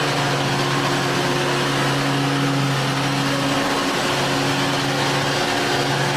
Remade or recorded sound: recorded